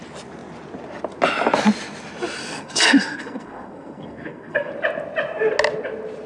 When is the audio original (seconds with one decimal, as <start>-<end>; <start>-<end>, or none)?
0.0-2.4; 4.7-6.3